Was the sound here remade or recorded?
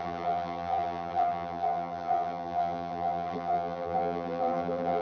remade